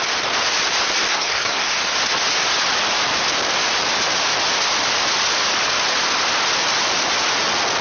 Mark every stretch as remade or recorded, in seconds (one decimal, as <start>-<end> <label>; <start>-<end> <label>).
0.0-1.1 recorded; 1.1-1.7 remade; 1.7-7.8 recorded